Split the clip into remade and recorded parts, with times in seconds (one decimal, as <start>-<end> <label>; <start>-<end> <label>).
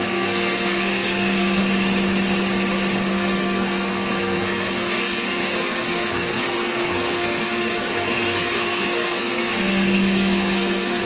0.0-1.6 remade; 1.6-3.1 recorded; 3.1-11.1 remade